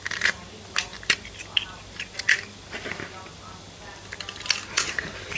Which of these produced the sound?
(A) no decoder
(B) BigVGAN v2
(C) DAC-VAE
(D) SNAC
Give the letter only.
A